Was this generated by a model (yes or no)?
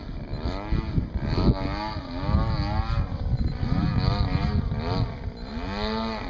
no